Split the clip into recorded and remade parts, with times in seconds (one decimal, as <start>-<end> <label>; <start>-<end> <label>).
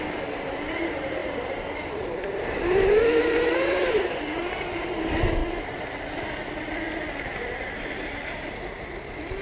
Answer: 0.0-9.4 remade